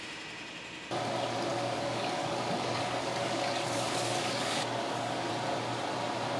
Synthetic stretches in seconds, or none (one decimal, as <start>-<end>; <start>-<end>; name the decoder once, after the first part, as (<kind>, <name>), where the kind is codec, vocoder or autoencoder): 1.5-5.3 (codec, DAC)